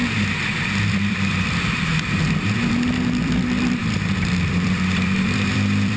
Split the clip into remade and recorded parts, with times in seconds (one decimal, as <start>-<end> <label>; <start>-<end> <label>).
0.0-0.9 recorded; 0.9-1.9 remade; 1.9-2.7 recorded; 2.7-6.0 remade